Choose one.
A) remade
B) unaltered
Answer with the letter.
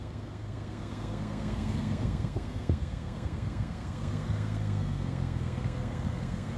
A